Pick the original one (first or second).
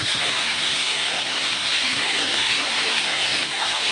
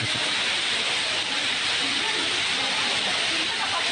second